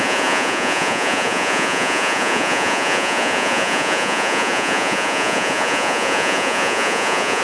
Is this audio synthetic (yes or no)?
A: yes